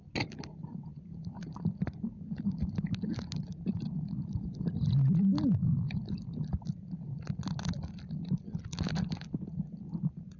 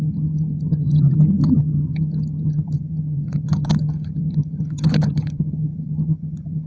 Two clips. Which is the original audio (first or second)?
first